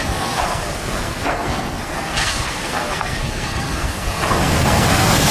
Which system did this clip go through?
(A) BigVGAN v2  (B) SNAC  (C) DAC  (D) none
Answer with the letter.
B